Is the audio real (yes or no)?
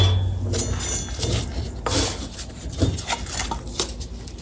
yes